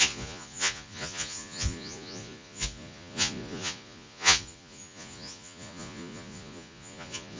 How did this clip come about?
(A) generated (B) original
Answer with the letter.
A